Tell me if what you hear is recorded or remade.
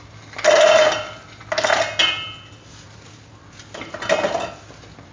recorded